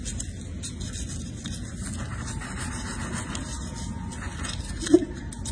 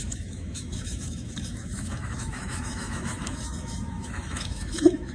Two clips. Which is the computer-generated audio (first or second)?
second